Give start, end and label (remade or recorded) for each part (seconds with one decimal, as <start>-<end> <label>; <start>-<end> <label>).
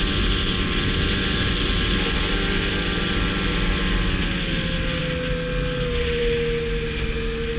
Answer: 0.0-7.6 recorded